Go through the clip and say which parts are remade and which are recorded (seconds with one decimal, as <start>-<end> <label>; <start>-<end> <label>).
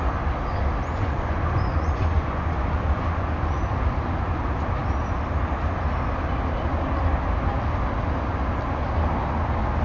0.0-0.8 recorded; 0.8-3.6 remade; 3.6-9.8 recorded